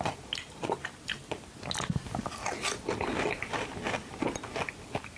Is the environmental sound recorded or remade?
recorded